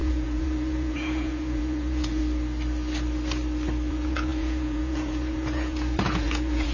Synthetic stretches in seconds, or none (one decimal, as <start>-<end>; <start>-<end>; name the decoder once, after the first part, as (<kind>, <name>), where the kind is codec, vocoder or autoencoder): 0.0-2.2 (vocoder, Vocos); 3.9-6.7